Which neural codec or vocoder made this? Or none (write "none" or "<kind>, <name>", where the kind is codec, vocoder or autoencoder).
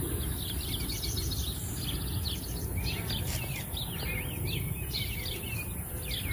none